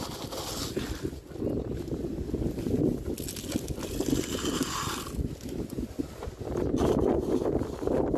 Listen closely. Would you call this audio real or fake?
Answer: real